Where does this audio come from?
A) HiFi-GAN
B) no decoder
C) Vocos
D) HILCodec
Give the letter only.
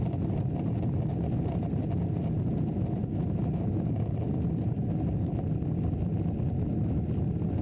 B